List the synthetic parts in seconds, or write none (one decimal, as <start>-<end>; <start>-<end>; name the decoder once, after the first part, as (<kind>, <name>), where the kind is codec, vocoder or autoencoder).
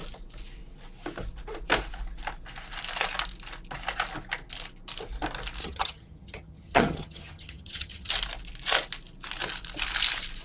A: 5.6-8.1 (vocoder, HiFi-GAN)